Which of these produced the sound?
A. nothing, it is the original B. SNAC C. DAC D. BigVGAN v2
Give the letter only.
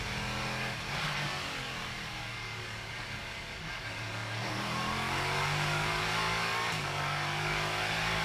C